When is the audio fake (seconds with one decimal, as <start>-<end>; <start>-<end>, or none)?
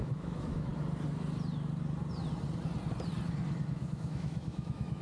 0.0-0.7; 3.7-5.0